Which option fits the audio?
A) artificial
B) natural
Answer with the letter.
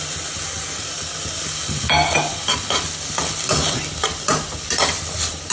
B